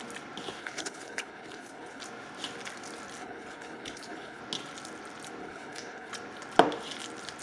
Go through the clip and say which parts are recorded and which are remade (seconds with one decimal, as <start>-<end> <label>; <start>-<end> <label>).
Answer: 0.0-0.6 recorded; 0.6-2.0 remade; 2.0-3.2 recorded; 3.2-4.4 remade; 4.4-5.4 recorded; 5.4-6.1 remade; 6.1-7.4 recorded